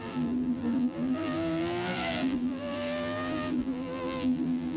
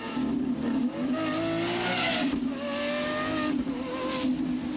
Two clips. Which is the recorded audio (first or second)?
second